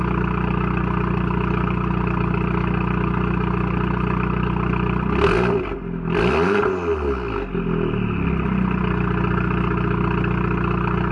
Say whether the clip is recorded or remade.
recorded